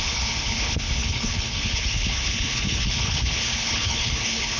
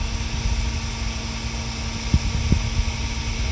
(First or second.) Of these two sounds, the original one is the second